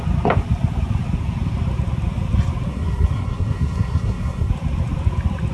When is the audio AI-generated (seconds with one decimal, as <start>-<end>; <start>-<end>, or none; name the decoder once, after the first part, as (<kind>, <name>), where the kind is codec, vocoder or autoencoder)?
2.7-4.5 (codec, SNAC)